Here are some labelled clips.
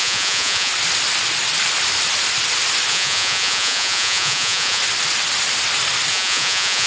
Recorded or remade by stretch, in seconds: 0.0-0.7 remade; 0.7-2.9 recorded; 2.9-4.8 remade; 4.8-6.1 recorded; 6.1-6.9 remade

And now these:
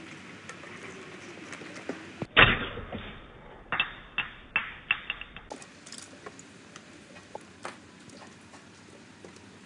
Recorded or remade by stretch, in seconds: 0.0-9.7 recorded